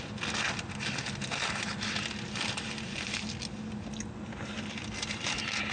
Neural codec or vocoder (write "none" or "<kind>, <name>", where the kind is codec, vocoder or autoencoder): none